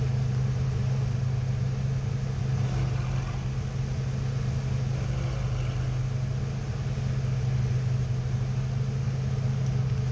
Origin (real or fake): real